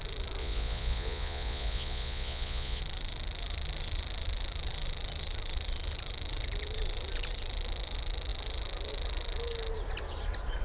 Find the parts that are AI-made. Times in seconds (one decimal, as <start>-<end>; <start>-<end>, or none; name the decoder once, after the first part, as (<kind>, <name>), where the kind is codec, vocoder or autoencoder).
0.4-2.8 (vocoder, Vocos)